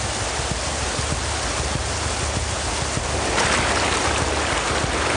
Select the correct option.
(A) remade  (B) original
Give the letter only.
B